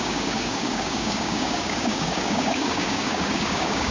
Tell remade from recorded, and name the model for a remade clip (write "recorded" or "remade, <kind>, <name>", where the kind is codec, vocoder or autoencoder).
remade, codec, DAC